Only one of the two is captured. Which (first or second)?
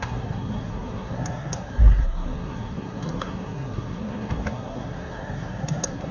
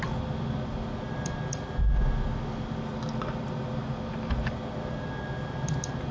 second